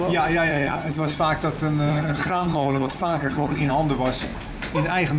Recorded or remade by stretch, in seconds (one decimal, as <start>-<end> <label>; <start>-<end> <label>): 0.0-0.5 recorded; 0.5-1.2 remade; 1.2-1.9 recorded; 1.9-3.7 remade; 3.7-5.2 recorded